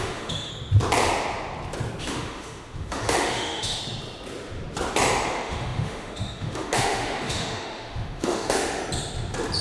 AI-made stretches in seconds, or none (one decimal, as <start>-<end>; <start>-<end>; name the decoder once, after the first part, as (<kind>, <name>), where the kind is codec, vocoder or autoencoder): 0.0-0.5 (autoencoder, DAC-VAE); 2.0-3.8; 5.3-8.8